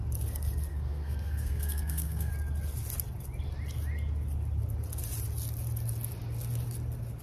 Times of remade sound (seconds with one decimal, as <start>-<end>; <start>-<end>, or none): 0.7-2.3